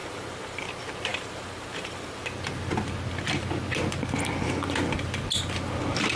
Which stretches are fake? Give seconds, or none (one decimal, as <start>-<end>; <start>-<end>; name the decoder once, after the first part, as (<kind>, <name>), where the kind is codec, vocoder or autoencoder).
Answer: 0.0-0.6 (vocoder, BigVGAN v2); 1.1-2.2